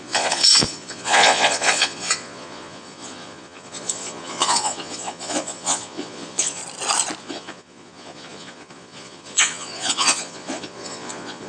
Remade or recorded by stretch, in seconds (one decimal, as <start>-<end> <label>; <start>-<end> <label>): 0.0-6.6 remade; 6.6-7.2 recorded; 7.2-11.5 remade